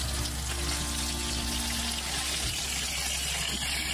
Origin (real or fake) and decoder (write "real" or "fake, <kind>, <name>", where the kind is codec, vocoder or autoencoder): real